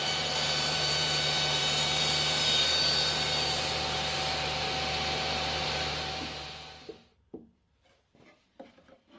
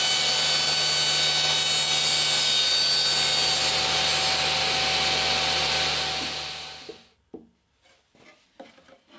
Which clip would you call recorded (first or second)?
second